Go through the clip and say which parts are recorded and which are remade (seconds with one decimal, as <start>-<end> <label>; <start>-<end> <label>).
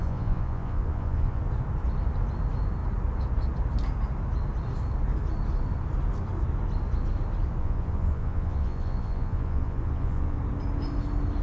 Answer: 0.0-1.4 remade; 1.4-7.6 recorded; 7.6-10.4 remade; 10.4-11.4 recorded